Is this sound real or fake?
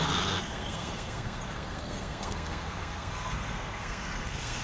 fake